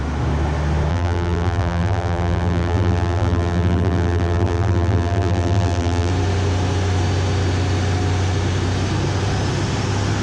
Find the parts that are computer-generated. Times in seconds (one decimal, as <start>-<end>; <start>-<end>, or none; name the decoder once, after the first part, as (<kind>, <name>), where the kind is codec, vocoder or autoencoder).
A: 0.9-6.1 (vocoder, BigVGAN v2)